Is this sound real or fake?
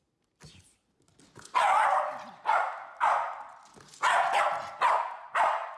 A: real